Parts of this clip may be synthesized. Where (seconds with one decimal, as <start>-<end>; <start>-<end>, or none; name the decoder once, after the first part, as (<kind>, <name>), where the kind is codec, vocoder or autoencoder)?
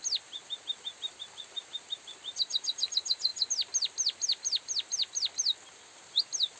none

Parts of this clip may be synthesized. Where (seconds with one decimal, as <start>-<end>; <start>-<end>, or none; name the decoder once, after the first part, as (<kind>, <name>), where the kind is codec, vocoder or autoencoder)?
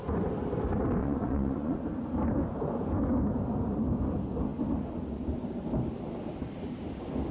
1.0-1.8 (vocoder, Vocos)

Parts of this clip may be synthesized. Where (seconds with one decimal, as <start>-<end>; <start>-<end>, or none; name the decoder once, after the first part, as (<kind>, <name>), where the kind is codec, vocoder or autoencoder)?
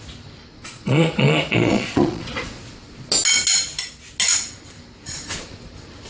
0.5-2.7 (vocoder, Vocos)